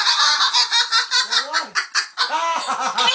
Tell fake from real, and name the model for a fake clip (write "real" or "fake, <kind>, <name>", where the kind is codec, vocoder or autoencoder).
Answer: real